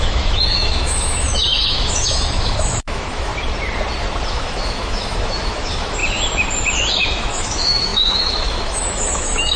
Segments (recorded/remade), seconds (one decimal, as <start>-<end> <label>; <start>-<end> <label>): 0.0-3.3 remade; 3.3-4.3 recorded; 4.3-6.0 remade; 6.0-6.9 recorded; 6.9-9.6 remade

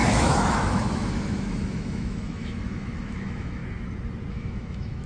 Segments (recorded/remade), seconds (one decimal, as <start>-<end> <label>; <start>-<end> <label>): 0.0-3.6 remade; 3.6-4.3 recorded; 4.3-5.1 remade